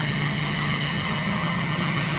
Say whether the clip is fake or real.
fake